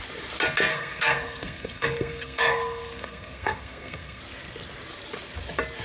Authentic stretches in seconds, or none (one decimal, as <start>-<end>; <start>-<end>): 0.0-0.7; 4.2-5.8